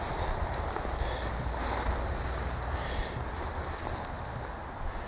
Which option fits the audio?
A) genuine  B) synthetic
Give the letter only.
A